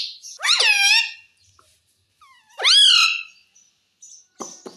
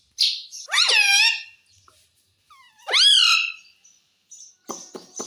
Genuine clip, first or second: first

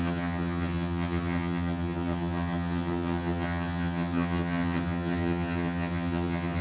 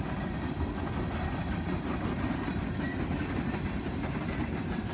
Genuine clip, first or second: second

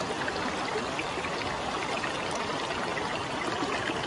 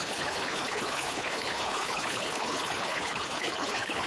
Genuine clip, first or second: first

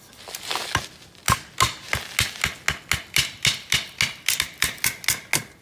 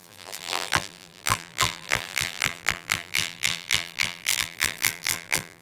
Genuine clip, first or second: first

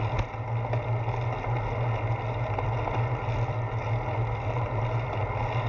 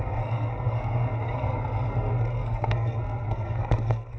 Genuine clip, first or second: first